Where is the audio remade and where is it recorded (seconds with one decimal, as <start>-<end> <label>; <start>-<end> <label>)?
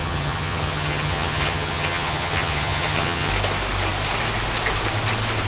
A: 0.0-3.3 remade; 3.3-5.5 recorded